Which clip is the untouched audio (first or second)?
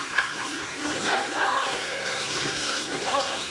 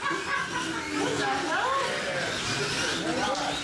second